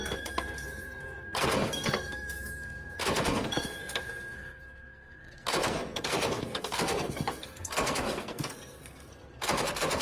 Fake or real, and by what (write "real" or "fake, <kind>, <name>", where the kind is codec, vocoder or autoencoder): fake, codec, SNAC